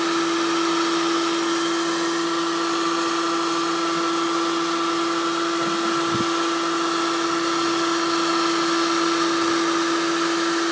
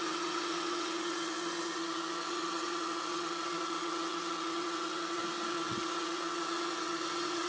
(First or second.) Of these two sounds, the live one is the first